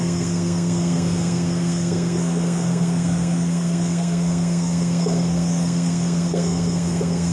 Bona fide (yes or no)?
no